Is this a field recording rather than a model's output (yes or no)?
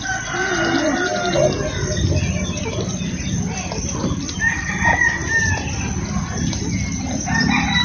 yes